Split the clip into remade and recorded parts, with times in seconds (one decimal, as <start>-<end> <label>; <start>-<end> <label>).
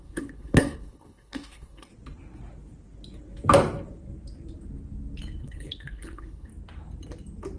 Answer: 0.0-1.9 remade; 1.9-5.4 recorded; 5.4-6.5 remade; 6.5-7.6 recorded